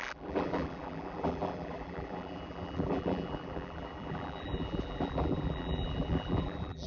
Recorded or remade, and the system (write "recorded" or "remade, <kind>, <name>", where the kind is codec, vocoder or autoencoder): remade, vocoder, BigVGAN v2